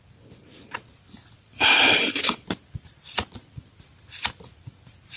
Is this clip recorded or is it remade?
remade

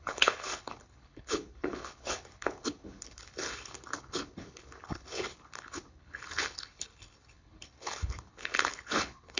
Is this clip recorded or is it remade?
remade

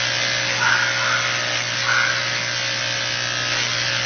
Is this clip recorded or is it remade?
recorded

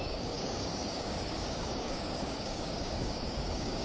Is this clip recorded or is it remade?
remade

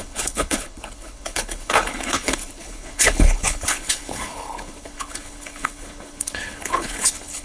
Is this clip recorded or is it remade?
remade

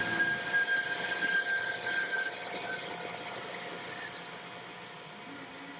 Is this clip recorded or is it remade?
recorded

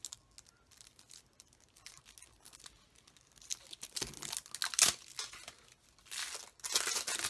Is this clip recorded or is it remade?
recorded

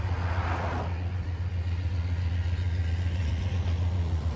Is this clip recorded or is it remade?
remade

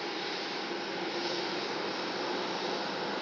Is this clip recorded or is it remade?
recorded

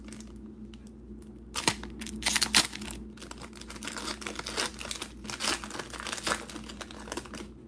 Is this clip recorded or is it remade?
recorded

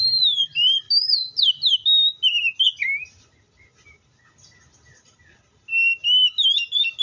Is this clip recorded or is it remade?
recorded